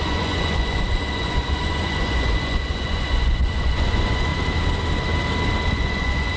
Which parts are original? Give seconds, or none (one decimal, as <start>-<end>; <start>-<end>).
4.3-5.7